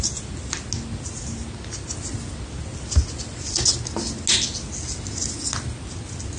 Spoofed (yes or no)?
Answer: no